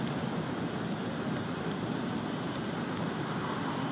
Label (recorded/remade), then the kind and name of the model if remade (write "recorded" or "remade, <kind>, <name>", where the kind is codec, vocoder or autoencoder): recorded